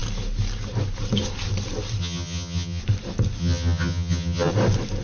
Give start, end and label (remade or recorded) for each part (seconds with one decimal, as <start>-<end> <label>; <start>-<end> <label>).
0.0-2.0 recorded; 2.0-2.8 remade; 2.8-3.4 recorded; 3.4-4.5 remade; 4.5-5.0 recorded